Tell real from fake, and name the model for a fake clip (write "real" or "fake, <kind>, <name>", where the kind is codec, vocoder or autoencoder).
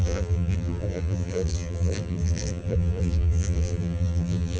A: fake, vocoder, BigVGAN v2